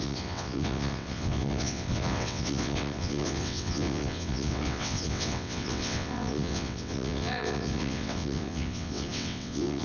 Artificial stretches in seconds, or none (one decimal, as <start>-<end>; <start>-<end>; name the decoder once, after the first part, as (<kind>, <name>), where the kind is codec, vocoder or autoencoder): 0.0-9.8 (vocoder, WaveNeXt)